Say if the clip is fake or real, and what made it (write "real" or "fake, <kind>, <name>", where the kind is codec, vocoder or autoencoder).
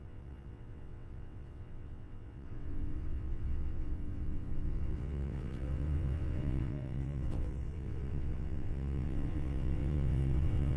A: fake, vocoder, WaveNeXt